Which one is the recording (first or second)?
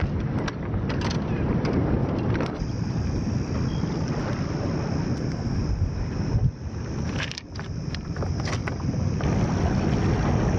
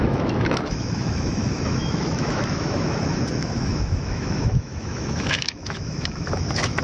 first